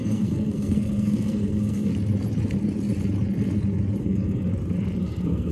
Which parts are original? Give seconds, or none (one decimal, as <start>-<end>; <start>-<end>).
1.9-4.0; 4.5-5.0